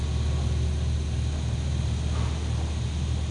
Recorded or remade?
recorded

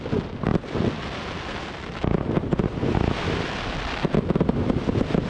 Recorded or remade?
recorded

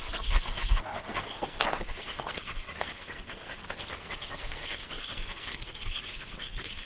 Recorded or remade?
remade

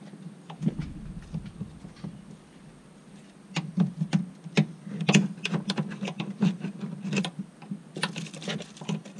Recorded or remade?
recorded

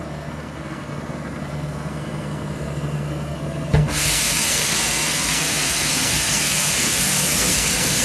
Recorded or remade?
remade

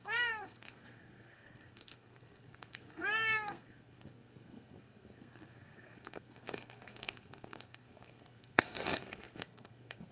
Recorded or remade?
remade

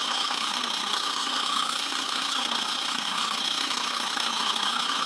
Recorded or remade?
remade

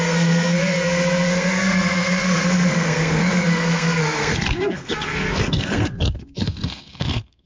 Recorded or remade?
remade